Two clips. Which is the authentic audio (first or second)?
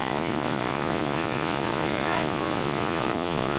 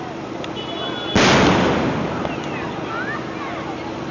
second